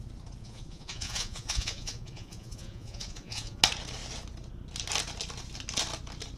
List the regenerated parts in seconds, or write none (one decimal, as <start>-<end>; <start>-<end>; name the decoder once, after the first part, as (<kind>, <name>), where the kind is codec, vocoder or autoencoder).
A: 0.4-3.6 (vocoder, Vocos)